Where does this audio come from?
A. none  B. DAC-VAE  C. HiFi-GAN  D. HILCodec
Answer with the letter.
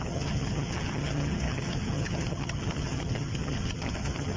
C